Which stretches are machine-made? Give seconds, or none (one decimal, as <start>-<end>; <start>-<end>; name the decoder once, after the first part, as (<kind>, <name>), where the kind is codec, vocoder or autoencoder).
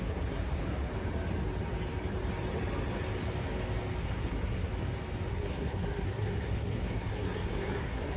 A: 0.0-0.9 (codec, SNAC); 4.0-4.7; 5.3-8.2